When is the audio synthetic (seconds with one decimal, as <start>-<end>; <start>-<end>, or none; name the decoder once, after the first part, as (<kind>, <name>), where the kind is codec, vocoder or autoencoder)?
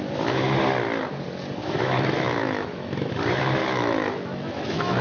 1.6-3.1 (autoencoder, DAC-VAE); 3.6-5.0